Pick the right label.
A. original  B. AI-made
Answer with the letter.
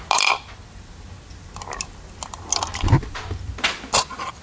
A